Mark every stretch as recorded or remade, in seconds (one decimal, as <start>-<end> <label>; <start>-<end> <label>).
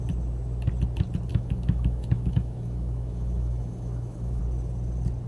0.0-1.3 recorded; 1.3-4.4 remade; 4.4-5.3 recorded